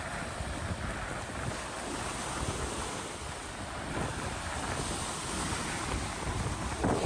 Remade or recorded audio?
recorded